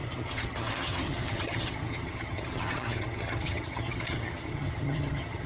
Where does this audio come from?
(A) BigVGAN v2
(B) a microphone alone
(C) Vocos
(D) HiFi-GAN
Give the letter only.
D